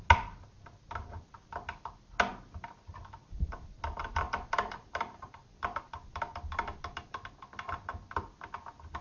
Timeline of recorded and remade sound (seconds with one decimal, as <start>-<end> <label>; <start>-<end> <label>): 0.0-4.0 recorded; 4.0-5.4 remade; 5.4-9.0 recorded